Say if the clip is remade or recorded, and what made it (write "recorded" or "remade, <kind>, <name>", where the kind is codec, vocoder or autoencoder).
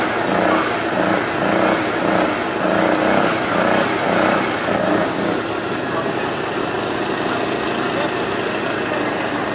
recorded